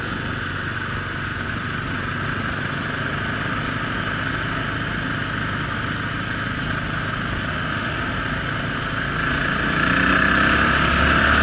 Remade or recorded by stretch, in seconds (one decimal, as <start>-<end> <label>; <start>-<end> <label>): 0.0-7.5 recorded; 7.5-8.2 remade; 8.2-11.4 recorded